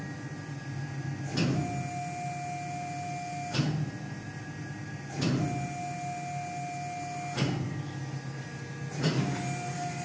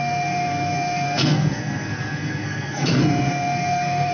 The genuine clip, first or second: first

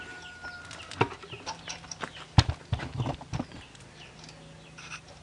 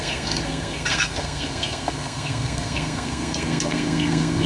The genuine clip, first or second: first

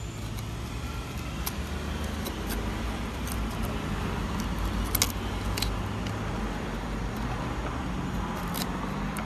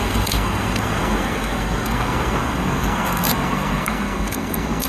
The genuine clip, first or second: first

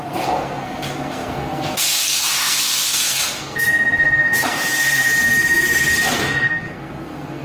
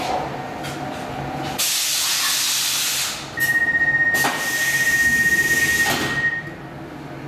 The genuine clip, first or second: second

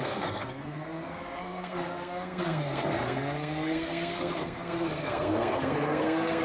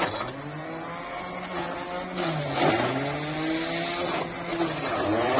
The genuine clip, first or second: second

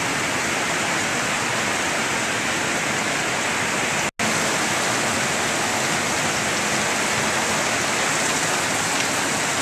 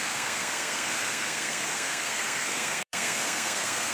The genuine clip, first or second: first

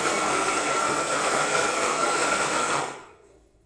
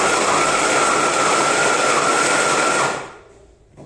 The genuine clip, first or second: second